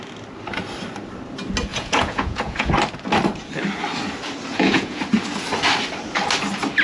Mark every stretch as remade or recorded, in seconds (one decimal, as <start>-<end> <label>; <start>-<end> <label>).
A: 0.0-1.7 recorded; 1.7-2.7 remade; 2.7-4.5 recorded; 4.5-5.0 remade; 5.0-6.8 recorded